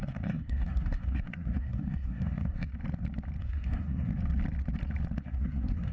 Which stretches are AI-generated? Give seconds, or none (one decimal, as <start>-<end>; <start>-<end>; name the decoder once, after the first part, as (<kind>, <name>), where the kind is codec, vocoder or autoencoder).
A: 0.0-2.7 (codec, SNAC); 3.4-4.1; 5.2-5.9